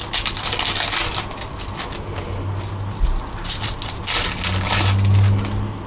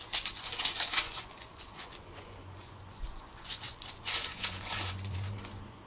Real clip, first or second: first